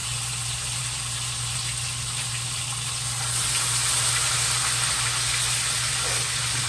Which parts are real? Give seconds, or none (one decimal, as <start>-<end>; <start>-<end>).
0.0-6.7